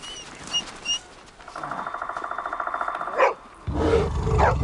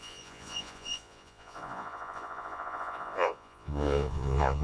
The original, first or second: first